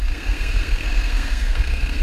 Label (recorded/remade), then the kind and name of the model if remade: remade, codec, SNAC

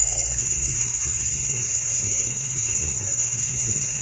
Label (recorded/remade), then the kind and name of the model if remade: remade, codec, SNAC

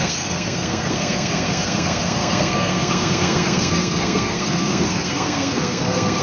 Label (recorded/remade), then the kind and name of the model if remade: remade, codec, SNAC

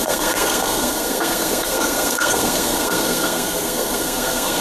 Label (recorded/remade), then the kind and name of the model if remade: remade, codec, SNAC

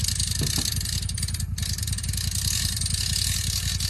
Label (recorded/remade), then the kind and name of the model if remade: recorded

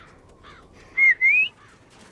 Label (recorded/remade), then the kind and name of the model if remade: recorded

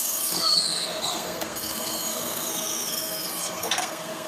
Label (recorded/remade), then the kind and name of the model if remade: remade, codec, SNAC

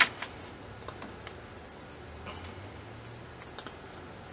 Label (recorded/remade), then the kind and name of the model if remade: recorded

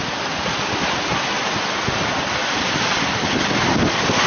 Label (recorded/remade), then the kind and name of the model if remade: recorded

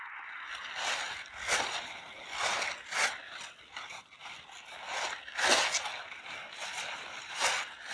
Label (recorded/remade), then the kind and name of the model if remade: recorded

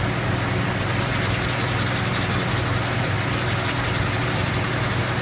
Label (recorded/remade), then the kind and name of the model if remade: recorded